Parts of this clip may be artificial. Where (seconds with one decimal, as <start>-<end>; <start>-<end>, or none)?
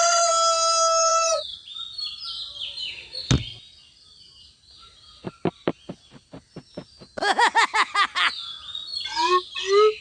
none